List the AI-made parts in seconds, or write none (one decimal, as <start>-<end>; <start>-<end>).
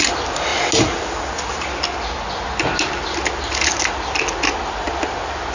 none